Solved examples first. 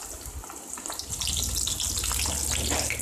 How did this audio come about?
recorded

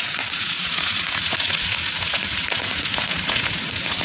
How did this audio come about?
remade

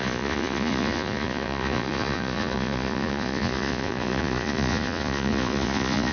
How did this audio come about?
remade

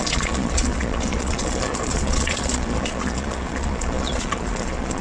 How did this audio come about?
remade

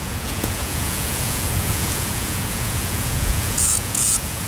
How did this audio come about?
remade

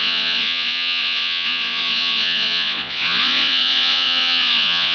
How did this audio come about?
remade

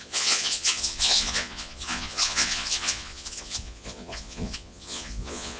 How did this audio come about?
remade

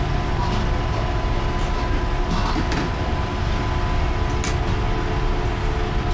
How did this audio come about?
recorded